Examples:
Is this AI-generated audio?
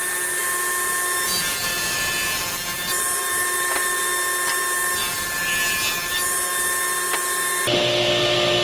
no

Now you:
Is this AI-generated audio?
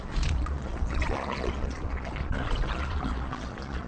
yes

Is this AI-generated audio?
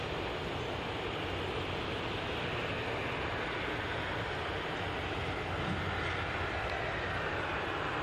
no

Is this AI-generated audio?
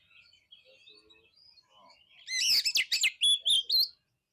no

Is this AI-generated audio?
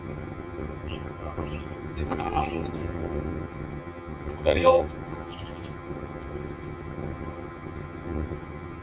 yes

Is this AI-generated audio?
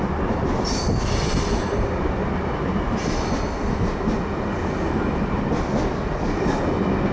no